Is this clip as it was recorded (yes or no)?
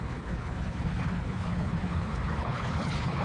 no